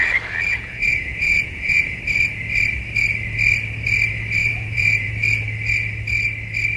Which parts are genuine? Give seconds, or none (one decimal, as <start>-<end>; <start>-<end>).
0.0-0.5; 2.0-4.4; 5.1-6.8